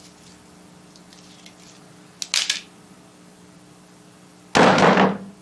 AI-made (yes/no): no